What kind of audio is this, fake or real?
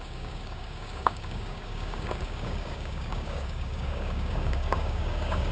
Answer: fake